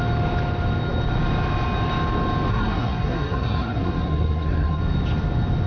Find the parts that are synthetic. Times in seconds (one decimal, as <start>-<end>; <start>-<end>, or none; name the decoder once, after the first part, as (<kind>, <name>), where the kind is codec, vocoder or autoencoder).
2.5-4.8 (codec, SNAC)